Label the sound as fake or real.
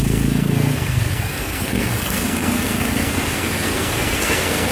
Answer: fake